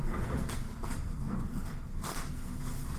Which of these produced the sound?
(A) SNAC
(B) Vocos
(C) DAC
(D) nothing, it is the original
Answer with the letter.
A